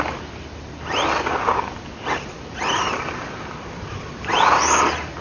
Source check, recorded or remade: recorded